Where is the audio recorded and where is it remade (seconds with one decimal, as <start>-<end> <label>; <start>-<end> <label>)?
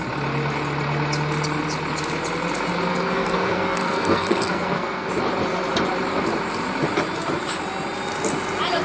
0.0-2.9 recorded; 2.9-5.1 remade; 5.1-8.8 recorded